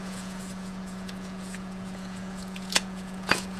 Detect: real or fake fake